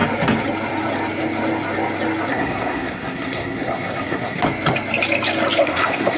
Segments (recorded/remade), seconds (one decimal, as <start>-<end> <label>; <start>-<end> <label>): 0.0-2.3 recorded; 2.3-4.4 remade; 4.4-5.6 recorded; 5.6-6.2 remade